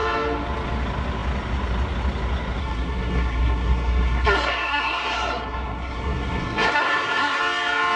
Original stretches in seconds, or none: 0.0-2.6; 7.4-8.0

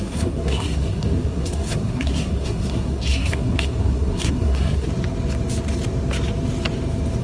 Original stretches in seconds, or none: 4.9-7.2

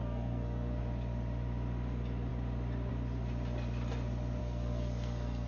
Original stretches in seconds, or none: 0.8-4.4

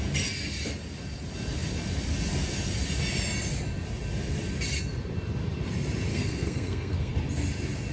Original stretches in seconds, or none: 0.0-6.1; 7.2-7.9

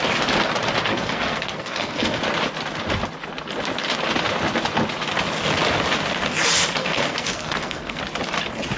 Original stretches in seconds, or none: 0.0-0.9; 2.2-6.8; 8.0-8.8

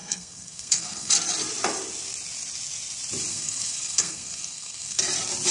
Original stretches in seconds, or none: 1.1-3.3; 5.0-5.5

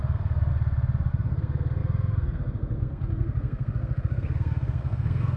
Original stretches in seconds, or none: 0.5-1.1